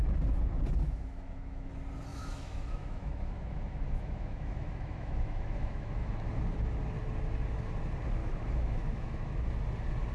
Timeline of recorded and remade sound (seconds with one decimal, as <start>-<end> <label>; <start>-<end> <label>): 0.0-0.8 recorded; 0.8-1.7 remade; 1.7-2.1 recorded; 2.1-6.3 remade; 6.3-8.2 recorded; 8.2-9.4 remade; 9.4-10.1 recorded